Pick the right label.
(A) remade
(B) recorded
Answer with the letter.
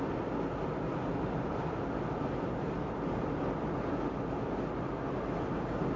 B